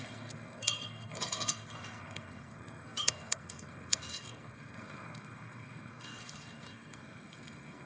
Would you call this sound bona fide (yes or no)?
no